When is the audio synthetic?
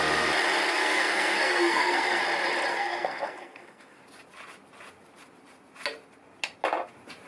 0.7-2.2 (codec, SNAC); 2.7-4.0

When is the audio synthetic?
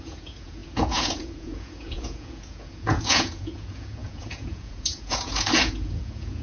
0.0-6.4 (vocoder, Vocos)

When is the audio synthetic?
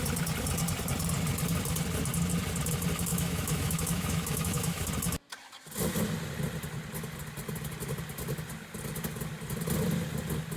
3.1-4.9 (autoencoder, DAC-VAE)